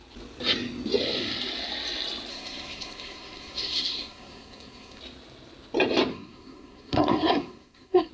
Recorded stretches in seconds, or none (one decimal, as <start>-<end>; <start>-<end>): 0.0-2.3; 5.0-6.1